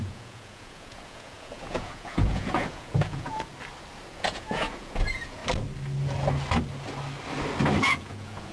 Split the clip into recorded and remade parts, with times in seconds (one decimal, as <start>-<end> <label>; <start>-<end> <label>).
0.0-3.5 remade; 3.5-4.1 recorded; 4.1-5.4 remade; 5.4-7.8 recorded; 7.8-8.5 remade

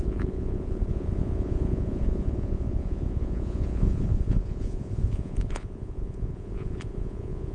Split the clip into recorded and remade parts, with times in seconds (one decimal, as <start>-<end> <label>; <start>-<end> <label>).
0.0-7.5 remade